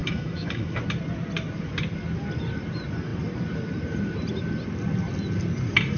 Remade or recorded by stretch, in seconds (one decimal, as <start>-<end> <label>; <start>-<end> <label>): 0.0-0.8 remade; 0.8-6.0 recorded